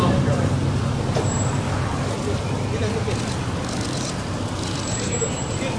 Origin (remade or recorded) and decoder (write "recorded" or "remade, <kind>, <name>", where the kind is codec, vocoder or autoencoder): recorded